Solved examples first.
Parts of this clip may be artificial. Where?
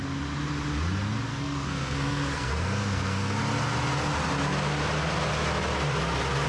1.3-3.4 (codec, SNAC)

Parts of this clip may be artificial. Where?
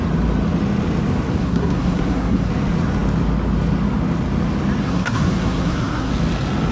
1.4-2.5 (codec, SNAC); 4.8-6.1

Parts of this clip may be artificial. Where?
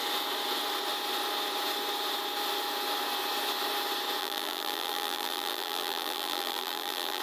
4.2-7.2 (vocoder, BigVGAN v2)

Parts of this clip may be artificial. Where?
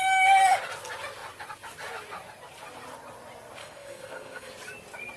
3.6-4.5 (codec, SNAC)